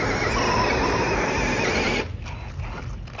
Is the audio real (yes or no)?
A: yes